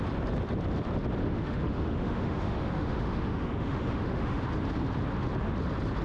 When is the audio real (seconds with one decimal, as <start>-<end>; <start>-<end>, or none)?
0.0-1.2; 4.4-6.0